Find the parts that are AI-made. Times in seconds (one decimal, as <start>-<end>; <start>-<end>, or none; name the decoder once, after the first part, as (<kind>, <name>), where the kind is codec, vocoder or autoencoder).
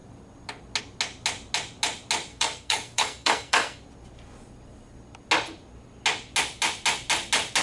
2.3-3.8 (codec, SNAC)